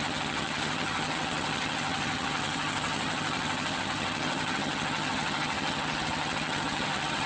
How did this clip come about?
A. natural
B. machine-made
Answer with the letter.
B